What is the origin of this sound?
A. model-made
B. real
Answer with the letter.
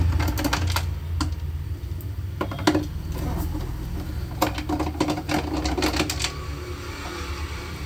B